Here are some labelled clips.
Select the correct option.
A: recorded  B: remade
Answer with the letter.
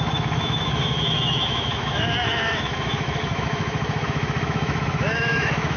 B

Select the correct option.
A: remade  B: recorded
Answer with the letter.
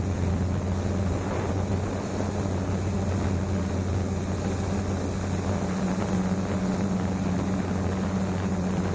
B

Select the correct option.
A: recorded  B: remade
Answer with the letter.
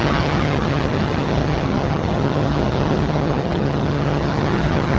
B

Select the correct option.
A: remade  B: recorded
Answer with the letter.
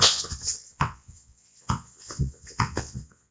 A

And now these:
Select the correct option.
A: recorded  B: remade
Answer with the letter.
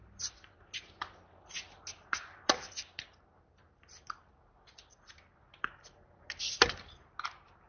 A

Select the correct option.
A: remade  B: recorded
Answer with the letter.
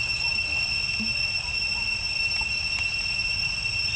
B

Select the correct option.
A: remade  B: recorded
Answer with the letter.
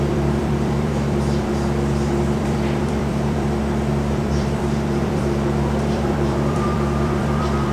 A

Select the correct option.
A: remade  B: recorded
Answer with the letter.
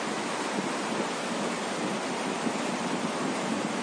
B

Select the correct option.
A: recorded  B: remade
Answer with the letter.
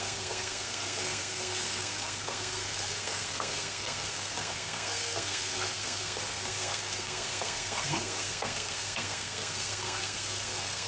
B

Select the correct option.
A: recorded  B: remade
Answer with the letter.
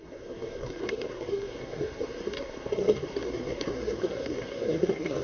B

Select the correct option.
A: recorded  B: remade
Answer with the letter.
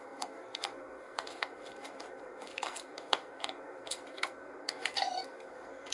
B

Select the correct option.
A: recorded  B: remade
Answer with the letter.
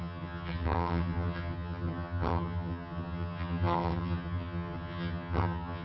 B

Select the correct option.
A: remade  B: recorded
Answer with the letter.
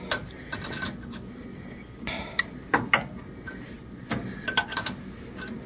B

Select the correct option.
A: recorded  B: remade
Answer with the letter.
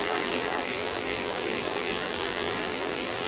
B